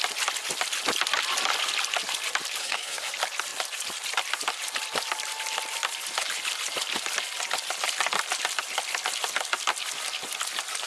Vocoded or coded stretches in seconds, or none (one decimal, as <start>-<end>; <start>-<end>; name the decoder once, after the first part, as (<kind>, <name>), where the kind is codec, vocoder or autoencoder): 2.6-3.1 (codec, SNAC)